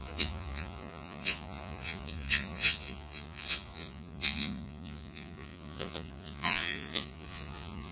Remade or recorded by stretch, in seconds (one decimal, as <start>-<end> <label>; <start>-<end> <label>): 0.0-7.9 remade